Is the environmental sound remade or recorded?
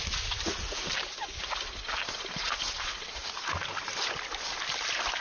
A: recorded